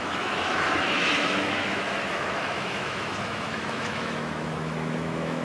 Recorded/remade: remade